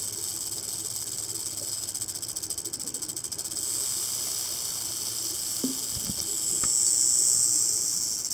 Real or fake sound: real